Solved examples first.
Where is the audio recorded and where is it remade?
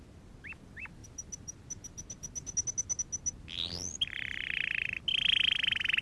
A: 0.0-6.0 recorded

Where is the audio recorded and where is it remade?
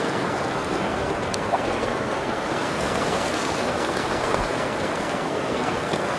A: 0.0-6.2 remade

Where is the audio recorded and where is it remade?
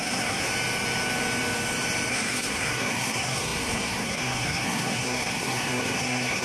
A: 0.0-0.5 remade; 0.5-2.1 recorded; 2.1-6.4 remade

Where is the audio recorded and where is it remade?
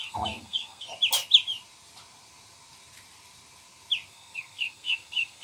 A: 0.0-0.9 remade; 0.9-4.1 recorded; 4.1-5.4 remade